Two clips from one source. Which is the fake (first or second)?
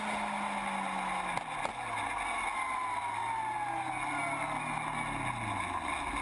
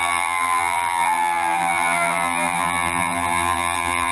second